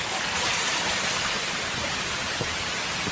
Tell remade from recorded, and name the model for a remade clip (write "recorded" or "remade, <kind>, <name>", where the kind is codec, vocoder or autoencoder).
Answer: remade, vocoder, BigVGAN v2